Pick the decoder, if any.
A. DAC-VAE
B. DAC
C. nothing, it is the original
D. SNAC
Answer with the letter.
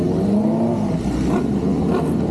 C